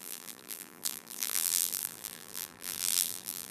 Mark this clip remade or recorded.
remade